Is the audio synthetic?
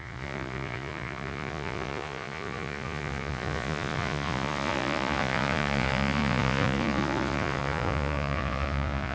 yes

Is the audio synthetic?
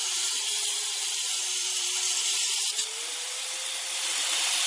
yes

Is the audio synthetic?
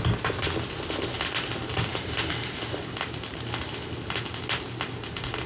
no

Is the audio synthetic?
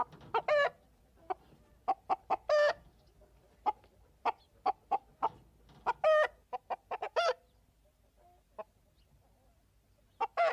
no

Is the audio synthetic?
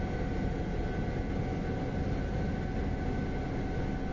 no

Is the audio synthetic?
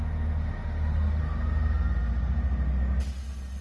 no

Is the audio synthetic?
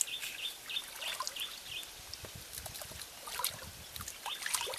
no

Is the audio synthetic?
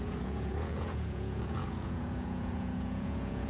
yes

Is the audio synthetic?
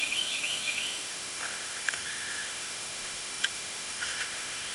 yes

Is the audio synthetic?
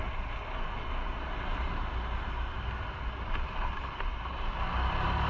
no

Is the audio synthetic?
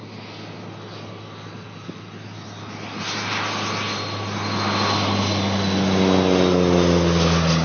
no